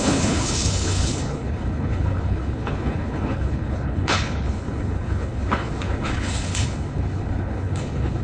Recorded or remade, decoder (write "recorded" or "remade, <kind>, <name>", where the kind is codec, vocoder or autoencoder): remade, codec, HILCodec